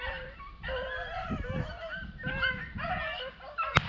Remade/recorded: recorded